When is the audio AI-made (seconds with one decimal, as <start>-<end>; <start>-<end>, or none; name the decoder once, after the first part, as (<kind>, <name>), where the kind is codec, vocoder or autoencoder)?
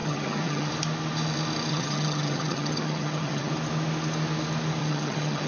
0.0-0.7 (vocoder, HiFi-GAN); 1.7-3.5; 4.8-5.5